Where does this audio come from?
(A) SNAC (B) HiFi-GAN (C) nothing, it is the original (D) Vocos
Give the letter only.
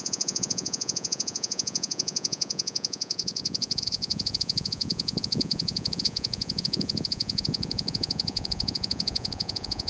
D